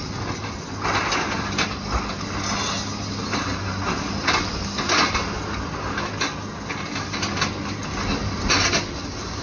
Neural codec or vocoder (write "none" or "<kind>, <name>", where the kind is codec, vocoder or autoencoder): none